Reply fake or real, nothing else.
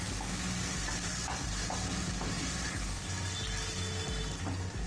real